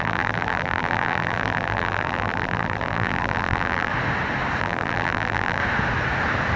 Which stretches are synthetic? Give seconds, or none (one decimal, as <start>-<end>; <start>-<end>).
0.0-3.9; 4.6-5.6